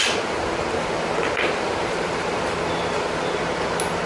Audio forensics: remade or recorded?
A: recorded